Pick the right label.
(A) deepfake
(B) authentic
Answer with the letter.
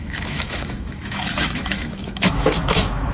A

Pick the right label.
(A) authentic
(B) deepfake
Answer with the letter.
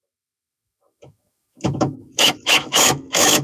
B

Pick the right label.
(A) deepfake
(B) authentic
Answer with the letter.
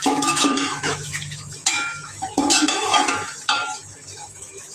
A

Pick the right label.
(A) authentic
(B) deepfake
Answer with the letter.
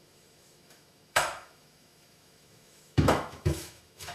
B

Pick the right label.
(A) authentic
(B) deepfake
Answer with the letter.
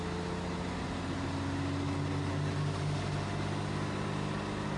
A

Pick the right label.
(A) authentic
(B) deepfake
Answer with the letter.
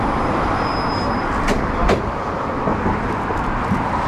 A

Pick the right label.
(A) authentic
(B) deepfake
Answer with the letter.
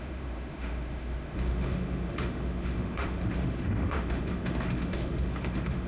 B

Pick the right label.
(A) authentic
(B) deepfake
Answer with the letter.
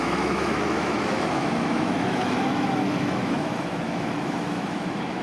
B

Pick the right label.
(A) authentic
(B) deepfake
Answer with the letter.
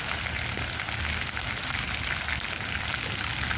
A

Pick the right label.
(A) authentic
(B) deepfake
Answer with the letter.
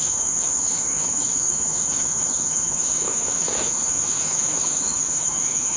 B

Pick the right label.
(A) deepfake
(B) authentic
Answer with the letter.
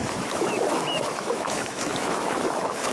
A